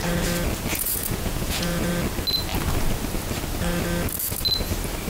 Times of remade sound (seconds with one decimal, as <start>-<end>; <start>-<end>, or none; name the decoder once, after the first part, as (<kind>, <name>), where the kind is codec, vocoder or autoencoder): 0.7-1.9 (vocoder, Vocos)

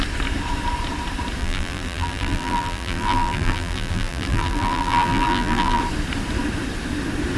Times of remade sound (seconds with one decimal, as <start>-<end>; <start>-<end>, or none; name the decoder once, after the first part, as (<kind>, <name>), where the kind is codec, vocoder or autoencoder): 1.4-5.8 (vocoder, BigVGAN v2)